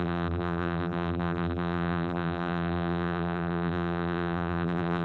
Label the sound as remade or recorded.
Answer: remade